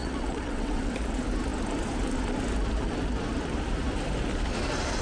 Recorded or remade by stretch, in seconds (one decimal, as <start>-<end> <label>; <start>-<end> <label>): 0.0-0.9 remade; 0.9-5.0 recorded